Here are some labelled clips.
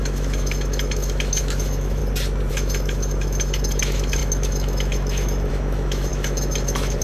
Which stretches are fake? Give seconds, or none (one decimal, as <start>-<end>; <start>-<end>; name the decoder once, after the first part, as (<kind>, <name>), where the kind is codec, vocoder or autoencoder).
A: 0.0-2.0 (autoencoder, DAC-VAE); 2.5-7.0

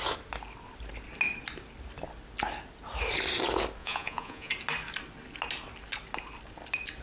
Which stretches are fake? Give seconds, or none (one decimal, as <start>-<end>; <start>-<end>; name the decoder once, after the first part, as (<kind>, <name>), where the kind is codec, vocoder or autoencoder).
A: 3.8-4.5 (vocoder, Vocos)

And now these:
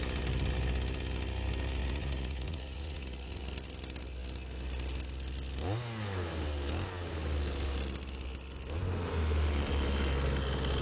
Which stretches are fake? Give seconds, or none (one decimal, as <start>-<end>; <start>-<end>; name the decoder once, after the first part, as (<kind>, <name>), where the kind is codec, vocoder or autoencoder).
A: 1.8-3.4 (vocoder, Vocos)